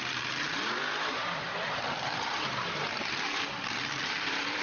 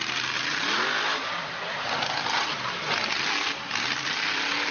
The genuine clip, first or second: second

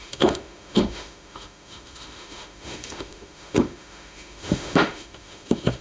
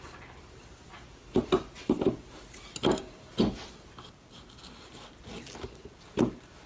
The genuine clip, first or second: second